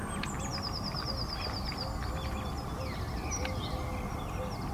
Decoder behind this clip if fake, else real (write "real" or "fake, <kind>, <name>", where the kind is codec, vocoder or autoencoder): real